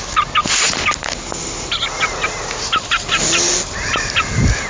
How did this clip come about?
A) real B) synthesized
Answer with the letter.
A